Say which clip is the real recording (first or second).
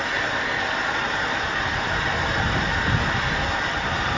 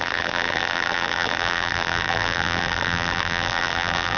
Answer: first